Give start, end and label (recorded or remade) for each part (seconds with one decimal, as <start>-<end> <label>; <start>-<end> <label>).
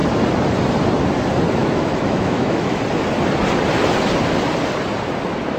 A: 0.0-1.6 recorded; 1.6-2.8 remade; 2.8-5.6 recorded